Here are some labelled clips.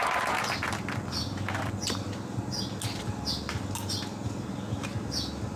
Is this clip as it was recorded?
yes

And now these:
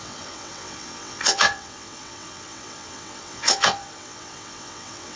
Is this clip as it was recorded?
no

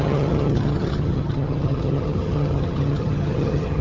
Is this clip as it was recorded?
no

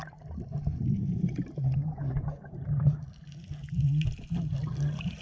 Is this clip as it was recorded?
yes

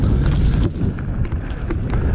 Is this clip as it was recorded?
yes